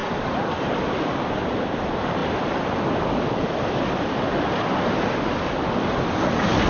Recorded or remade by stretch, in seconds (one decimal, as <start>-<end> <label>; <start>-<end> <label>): 0.0-6.7 recorded